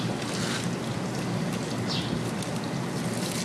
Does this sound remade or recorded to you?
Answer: recorded